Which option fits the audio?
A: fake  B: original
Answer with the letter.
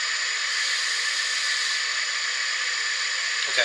B